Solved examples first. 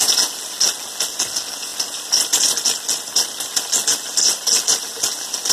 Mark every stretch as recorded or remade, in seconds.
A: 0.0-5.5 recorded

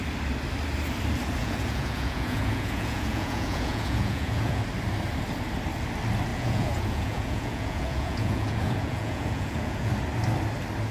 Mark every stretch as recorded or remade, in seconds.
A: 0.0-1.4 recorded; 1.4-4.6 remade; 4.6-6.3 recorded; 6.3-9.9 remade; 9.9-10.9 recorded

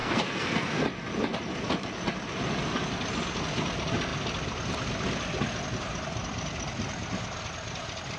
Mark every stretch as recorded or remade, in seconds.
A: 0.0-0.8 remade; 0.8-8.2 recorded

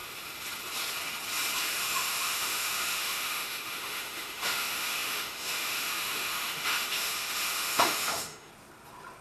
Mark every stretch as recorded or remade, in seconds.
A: 0.0-1.6 recorded; 1.6-8.5 remade; 8.5-9.2 recorded

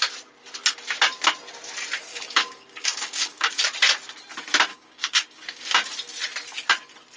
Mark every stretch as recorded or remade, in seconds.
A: 0.0-2.1 recorded; 2.1-3.6 remade; 3.6-4.7 recorded; 4.7-5.9 remade; 5.9-7.2 recorded

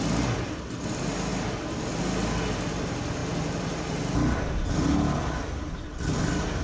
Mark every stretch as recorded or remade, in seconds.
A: 0.0-6.6 recorded

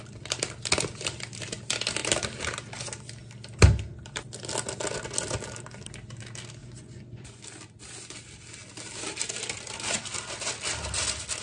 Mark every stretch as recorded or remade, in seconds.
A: 0.0-6.6 recorded; 6.6-7.4 remade; 7.4-11.4 recorded